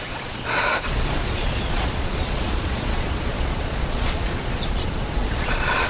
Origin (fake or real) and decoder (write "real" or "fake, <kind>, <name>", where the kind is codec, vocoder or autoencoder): fake, vocoder, Vocos